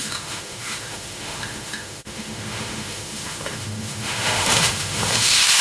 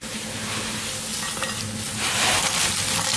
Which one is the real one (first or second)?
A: second